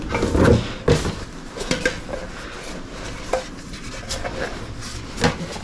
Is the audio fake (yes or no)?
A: no